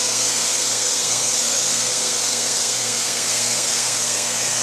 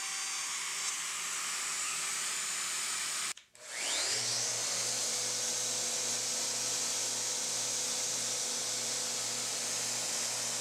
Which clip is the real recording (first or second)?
second